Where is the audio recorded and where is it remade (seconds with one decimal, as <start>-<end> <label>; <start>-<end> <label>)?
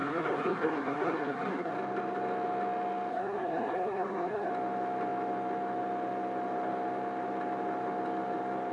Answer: 0.0-1.7 remade; 1.7-3.1 recorded; 3.1-4.5 remade; 4.5-8.7 recorded